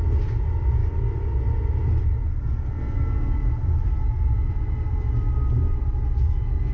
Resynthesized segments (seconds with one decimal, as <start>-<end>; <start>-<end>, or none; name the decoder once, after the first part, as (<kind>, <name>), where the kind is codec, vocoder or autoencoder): none